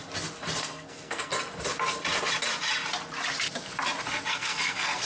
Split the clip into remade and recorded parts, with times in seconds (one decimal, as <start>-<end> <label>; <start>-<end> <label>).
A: 0.0-0.6 recorded; 0.6-1.3 remade; 1.3-4.3 recorded; 4.3-5.0 remade